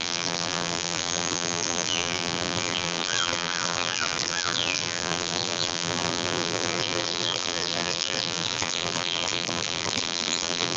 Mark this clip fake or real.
fake